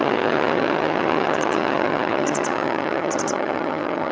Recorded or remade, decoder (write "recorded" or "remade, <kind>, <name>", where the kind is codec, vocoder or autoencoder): remade, vocoder, HiFi-GAN